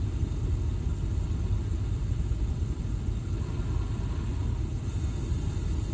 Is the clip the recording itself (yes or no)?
yes